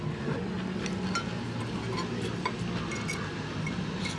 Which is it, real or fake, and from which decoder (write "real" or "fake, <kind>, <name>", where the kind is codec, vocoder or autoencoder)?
real